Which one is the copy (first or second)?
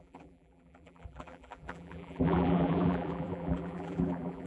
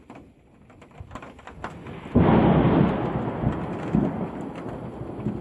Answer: first